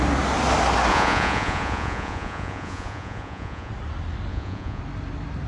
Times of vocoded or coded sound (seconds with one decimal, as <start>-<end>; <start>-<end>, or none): 0.9-3.7; 4.3-4.8